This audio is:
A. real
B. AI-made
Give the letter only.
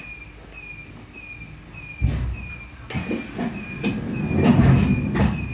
A